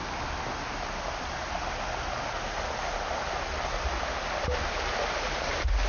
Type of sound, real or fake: real